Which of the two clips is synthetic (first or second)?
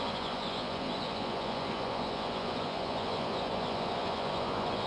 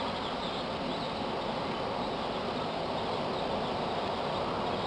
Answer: first